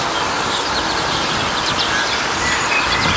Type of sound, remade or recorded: recorded